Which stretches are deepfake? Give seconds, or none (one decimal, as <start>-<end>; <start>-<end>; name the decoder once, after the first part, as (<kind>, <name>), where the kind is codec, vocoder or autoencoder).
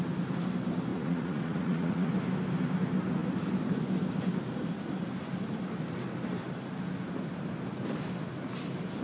0.9-2.1 (vocoder, Vocos)